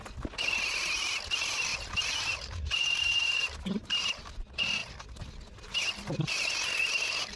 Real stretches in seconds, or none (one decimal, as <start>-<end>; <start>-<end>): 0.0-1.7; 4.2-4.8; 5.3-7.4